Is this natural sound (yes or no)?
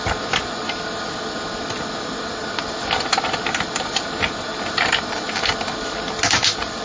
yes